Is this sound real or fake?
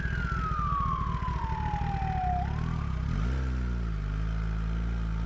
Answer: real